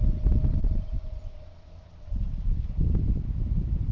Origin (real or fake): real